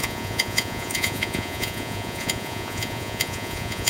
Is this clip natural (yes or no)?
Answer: no